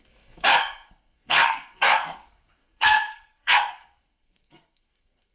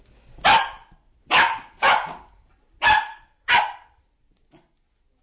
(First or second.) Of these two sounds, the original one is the second